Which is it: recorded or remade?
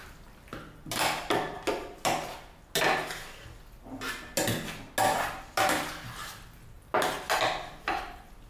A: recorded